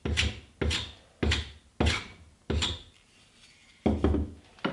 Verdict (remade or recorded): recorded